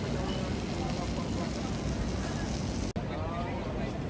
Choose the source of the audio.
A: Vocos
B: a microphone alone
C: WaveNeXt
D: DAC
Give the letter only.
B